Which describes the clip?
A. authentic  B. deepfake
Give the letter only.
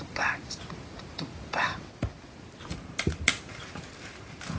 A